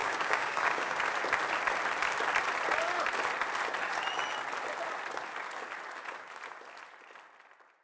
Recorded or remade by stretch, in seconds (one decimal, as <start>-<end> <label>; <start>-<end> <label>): 0.0-1.0 remade; 1.0-7.8 recorded